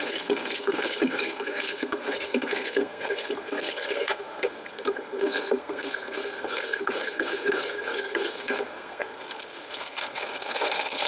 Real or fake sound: fake